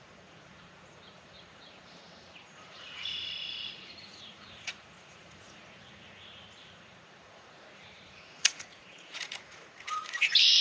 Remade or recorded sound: remade